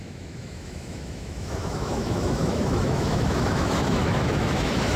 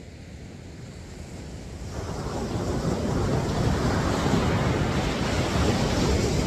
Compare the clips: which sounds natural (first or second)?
second